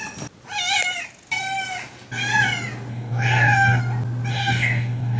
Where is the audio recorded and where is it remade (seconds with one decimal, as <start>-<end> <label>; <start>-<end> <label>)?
0.0-2.9 recorded; 2.9-3.8 remade; 3.8-4.3 recorded; 4.3-5.2 remade